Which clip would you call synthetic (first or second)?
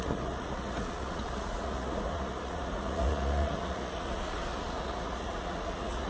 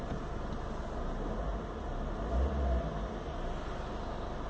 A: first